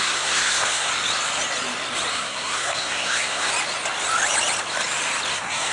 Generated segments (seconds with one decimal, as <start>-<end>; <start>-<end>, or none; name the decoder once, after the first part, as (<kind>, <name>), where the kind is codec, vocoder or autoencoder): 0.0-0.9 (codec, SNAC); 2.1-3.5; 5.3-5.7